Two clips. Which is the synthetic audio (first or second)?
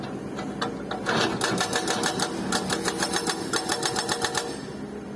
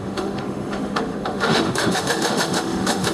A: second